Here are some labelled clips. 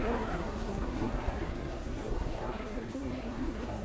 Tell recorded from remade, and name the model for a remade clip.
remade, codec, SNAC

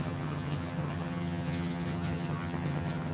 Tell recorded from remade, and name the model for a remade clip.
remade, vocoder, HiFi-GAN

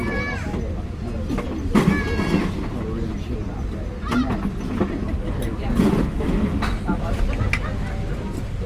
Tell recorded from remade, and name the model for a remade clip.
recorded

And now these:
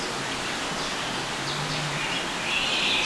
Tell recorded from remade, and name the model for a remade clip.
recorded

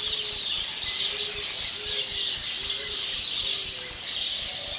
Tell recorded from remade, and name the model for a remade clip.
recorded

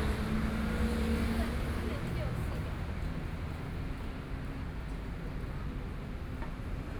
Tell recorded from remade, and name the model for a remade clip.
recorded